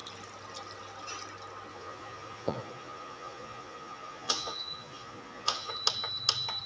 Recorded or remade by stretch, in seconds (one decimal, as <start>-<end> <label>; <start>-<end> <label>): 0.0-1.7 recorded; 1.7-5.7 remade; 5.7-6.7 recorded